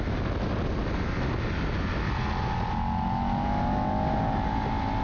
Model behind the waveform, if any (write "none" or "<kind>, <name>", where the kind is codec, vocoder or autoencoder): none